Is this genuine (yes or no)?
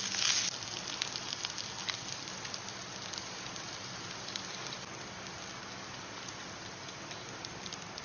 yes